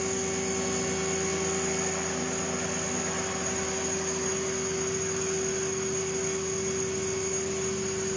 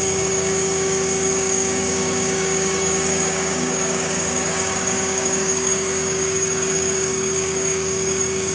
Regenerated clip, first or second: second